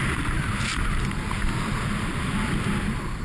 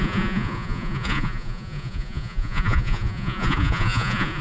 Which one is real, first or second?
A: first